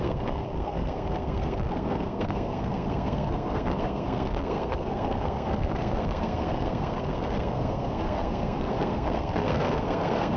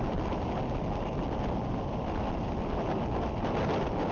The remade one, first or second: first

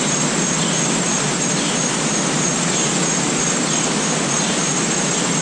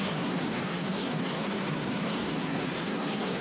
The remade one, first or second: second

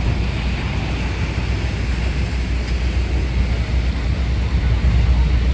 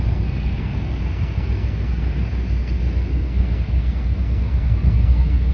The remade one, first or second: second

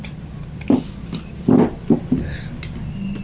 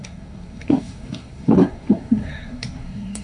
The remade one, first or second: second